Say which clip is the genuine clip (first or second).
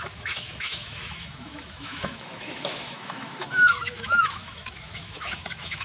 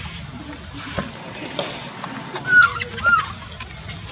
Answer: second